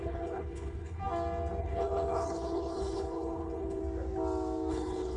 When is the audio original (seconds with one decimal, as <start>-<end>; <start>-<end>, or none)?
1.0-1.6; 3.8-4.7